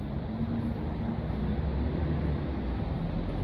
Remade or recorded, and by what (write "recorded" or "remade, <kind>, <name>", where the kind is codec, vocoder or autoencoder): recorded